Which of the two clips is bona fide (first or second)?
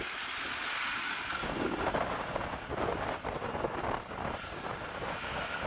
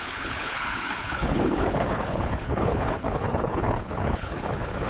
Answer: first